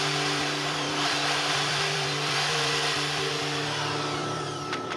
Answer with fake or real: fake